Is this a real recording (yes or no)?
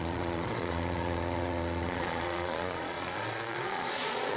no